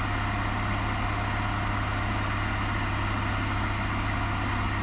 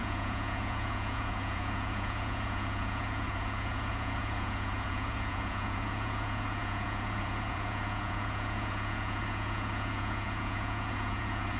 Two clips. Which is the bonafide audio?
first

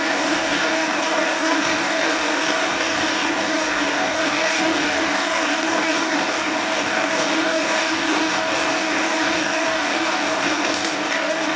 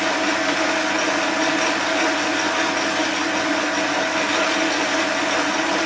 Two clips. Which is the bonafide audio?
second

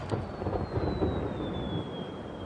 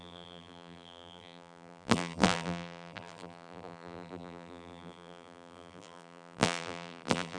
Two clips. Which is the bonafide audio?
first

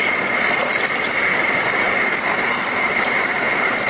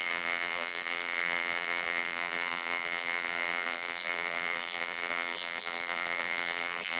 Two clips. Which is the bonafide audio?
first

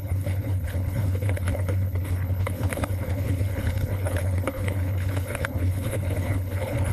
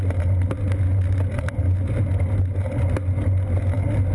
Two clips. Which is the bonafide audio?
second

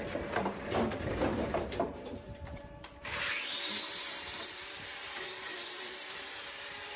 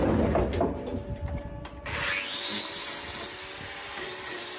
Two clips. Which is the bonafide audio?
second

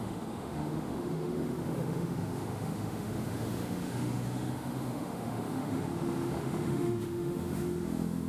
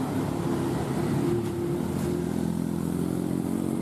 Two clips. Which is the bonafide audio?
second